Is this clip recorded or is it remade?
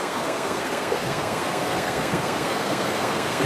remade